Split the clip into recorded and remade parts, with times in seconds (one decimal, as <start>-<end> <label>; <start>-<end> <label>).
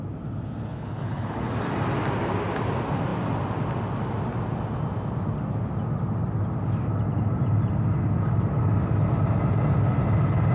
0.0-0.7 recorded; 0.7-1.5 remade; 1.5-10.5 recorded